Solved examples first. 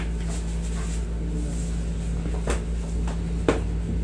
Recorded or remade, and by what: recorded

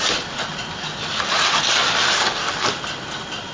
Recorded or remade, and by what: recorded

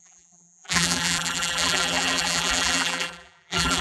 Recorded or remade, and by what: remade, vocoder, BigVGAN v2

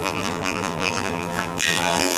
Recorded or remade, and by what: remade, vocoder, BigVGAN v2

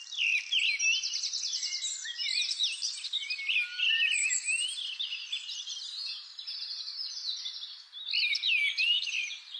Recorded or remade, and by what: recorded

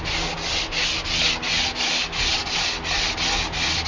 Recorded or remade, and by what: recorded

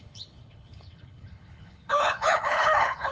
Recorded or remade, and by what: remade, codec, HILCodec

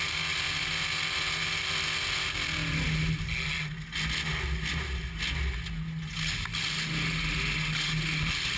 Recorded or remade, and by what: recorded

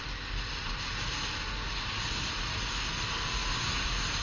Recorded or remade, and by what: recorded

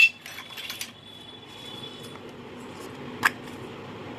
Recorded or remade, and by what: recorded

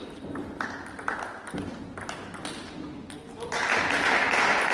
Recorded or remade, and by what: recorded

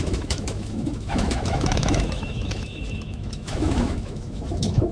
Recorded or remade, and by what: remade, autoencoder, DAC-VAE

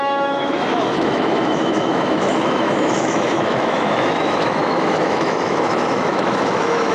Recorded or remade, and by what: remade, autoencoder, DAC-VAE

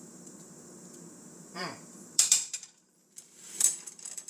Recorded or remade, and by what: remade, vocoder, BigVGAN v2